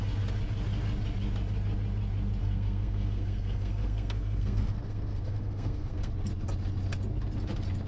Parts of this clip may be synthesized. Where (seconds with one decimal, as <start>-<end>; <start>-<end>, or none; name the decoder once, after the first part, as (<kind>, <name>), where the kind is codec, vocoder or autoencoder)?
2.4-6.1 (codec, SNAC)